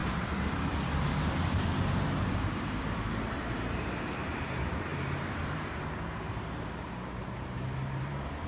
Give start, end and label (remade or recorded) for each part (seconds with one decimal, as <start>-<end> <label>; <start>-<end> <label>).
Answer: 0.0-8.5 remade